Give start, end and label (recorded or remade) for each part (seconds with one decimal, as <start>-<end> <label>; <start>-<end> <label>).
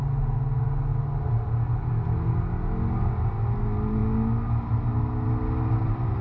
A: 0.0-6.2 recorded